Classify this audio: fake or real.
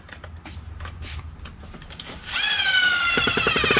fake